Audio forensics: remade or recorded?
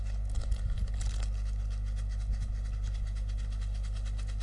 recorded